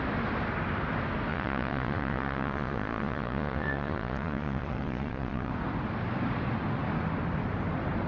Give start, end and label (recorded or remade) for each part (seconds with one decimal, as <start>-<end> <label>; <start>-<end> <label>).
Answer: 0.0-1.3 recorded; 1.3-5.5 remade; 5.5-8.1 recorded